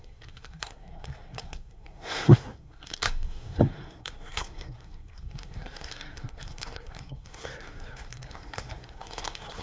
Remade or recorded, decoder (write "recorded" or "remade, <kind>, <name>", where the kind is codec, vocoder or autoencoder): remade, codec, SNAC